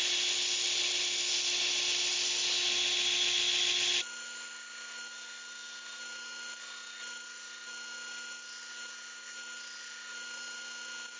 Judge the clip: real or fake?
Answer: real